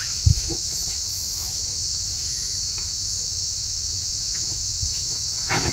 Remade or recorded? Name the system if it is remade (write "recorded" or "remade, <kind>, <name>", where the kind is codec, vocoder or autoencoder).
remade, autoencoder, DAC-VAE